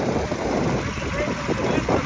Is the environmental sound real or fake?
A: real